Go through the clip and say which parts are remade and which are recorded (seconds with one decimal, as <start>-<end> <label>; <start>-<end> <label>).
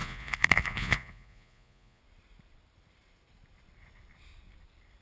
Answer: 0.0-2.0 remade; 2.0-5.0 recorded